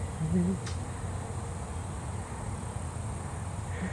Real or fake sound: real